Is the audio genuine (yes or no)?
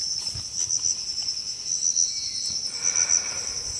yes